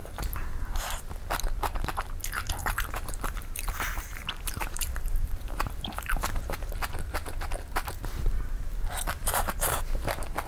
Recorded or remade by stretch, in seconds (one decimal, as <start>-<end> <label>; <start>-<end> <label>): 0.0-0.8 remade; 0.8-2.6 recorded; 2.6-6.7 remade; 6.7-10.5 recorded